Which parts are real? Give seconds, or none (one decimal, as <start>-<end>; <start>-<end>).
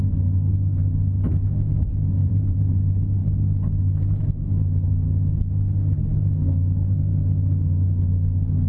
0.0-2.2; 2.7-8.7